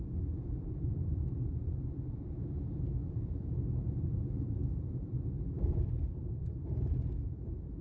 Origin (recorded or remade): remade